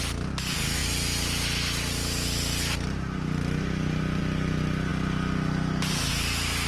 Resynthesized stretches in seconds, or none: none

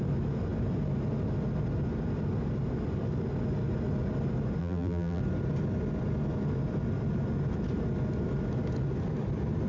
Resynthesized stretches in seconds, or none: 4.6-5.2 (vocoder, BigVGAN v2)

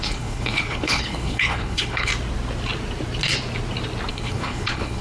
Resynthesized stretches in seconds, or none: 0.0-2.1 (codec, HILCodec); 4.1-5.0

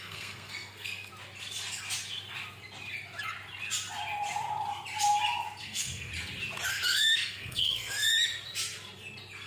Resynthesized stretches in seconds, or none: 0.0-1.1 (codec, SNAC); 5.6-6.1; 6.7-8.1

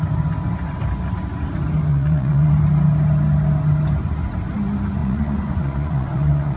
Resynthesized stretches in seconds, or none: 1.9-2.5 (vocoder, Vocos); 5.0-6.6

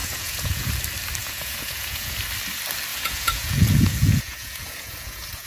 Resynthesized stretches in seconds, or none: 0.0-0.7 (vocoder, Vocos); 1.2-2.2; 2.9-5.5